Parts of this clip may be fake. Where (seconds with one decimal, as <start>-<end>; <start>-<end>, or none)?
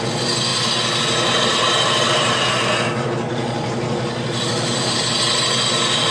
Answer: none